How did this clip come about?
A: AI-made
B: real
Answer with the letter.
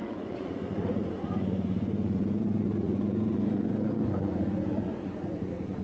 A